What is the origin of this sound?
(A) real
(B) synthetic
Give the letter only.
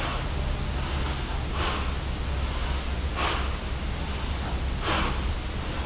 A